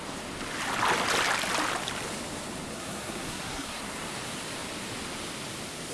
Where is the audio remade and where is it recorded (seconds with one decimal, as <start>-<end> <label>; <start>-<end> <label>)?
0.0-2.7 recorded; 2.7-3.8 remade; 3.8-5.9 recorded